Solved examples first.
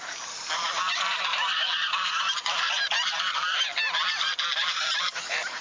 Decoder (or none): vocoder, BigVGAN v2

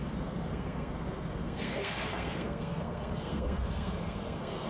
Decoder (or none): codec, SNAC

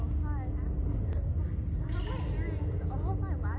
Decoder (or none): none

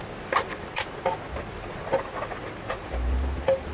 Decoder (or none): none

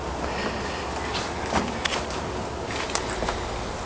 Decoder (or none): none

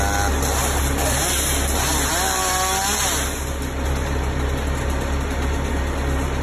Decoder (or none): none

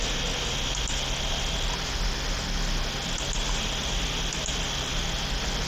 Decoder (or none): none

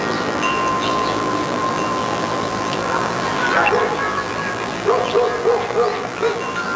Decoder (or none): vocoder, BigVGAN v2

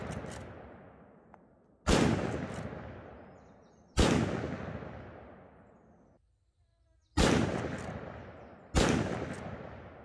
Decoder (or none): none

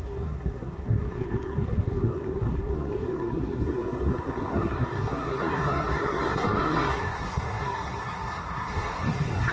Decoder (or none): codec, SNAC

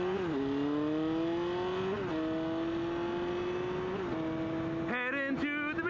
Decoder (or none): none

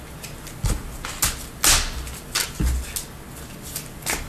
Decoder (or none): none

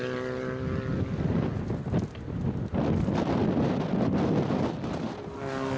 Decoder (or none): none